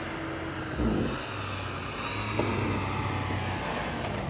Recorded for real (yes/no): yes